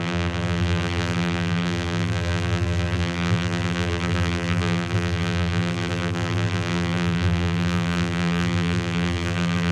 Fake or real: fake